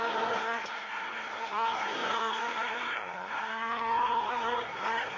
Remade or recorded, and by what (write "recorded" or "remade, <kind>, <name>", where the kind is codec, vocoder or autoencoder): remade, codec, SNAC